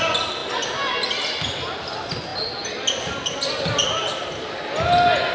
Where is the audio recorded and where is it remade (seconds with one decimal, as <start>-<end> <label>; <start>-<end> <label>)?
0.0-5.3 recorded